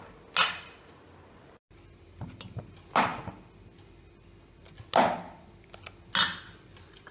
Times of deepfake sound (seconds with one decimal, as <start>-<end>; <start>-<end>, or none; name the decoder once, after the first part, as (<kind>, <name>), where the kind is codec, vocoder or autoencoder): none